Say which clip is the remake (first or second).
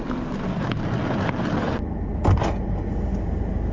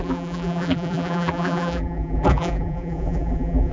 second